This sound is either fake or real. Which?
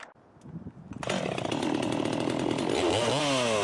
real